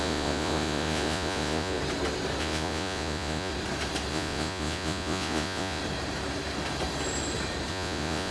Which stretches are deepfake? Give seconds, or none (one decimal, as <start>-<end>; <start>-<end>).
0.0-1.8; 2.4-3.5; 4.1-5.8; 7.7-8.3